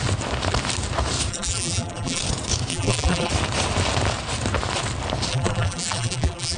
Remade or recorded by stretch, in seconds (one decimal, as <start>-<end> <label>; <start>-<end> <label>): 0.0-1.3 recorded; 1.3-2.2 remade; 2.2-2.7 recorded; 2.7-3.3 remade; 3.3-5.3 recorded; 5.3-6.6 remade